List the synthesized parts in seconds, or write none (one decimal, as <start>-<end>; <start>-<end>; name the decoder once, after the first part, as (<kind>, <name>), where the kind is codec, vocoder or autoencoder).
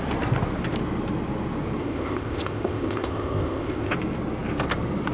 1.8-3.9 (codec, ZipCodec)